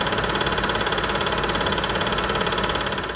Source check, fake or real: real